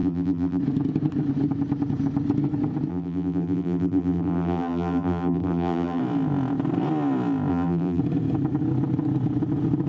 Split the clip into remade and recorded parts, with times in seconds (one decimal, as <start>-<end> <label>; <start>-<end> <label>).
0.0-0.6 remade; 0.6-2.9 recorded; 2.9-6.0 remade; 6.0-7.5 recorded; 7.5-8.0 remade; 8.0-9.9 recorded